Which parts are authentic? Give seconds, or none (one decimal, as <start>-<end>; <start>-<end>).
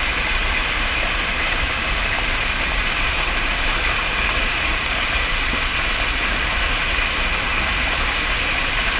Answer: none